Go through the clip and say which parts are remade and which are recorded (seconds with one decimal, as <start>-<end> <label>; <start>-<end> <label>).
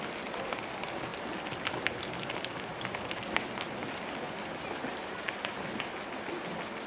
0.0-6.9 recorded